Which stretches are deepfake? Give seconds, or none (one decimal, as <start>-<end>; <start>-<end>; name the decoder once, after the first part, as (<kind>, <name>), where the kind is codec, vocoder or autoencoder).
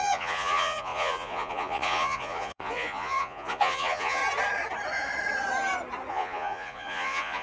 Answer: 0.0-4.2 (vocoder, Vocos); 6.1-7.4